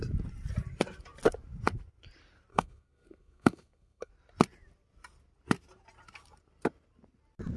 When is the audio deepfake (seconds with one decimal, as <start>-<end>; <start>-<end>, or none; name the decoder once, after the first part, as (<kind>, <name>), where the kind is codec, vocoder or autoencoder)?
2.5-4.1 (codec, SNAC)